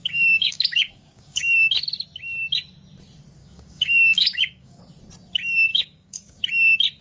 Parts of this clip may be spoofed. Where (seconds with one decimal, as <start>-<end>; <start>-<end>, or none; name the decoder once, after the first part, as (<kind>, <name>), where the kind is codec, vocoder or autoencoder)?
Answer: 0.0-1.7 (codec, DAC); 3.4-4.8; 5.7-6.4